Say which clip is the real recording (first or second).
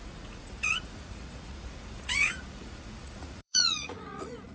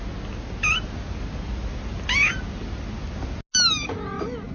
second